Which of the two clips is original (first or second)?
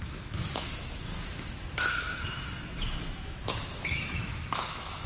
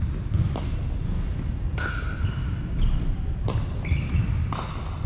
second